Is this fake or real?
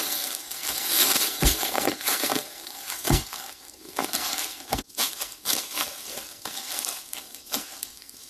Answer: fake